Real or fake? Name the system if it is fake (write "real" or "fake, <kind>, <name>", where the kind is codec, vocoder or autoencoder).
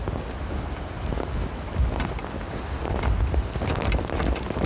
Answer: real